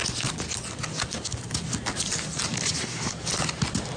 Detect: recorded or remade recorded